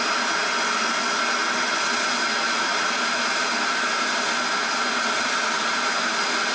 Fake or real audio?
real